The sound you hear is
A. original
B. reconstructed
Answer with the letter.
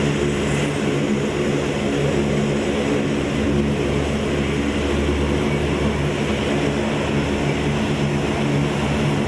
A